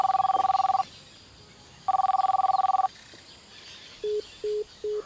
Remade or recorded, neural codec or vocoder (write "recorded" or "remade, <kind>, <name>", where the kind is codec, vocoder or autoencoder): recorded